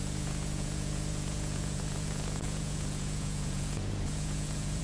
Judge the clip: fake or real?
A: fake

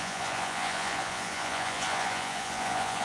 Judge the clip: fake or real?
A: fake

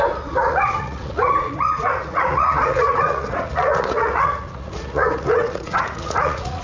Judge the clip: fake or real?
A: fake